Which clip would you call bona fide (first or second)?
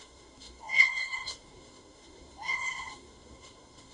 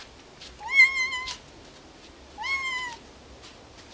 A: second